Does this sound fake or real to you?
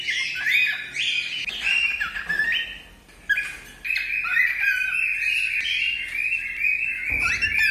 real